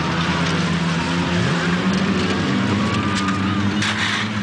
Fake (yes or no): no